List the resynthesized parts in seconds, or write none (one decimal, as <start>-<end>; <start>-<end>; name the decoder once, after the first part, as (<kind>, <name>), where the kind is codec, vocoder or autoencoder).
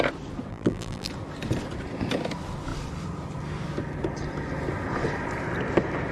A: 0.5-1.1 (vocoder, BigVGAN v2)